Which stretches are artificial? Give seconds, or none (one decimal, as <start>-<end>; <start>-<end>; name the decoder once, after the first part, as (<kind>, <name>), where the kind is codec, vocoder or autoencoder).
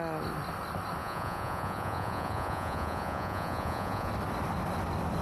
1.0-4.1 (vocoder, Vocos)